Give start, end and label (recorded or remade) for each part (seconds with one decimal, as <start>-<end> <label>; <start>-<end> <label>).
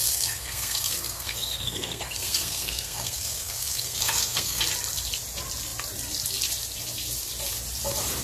0.0-4.6 remade; 4.6-8.2 recorded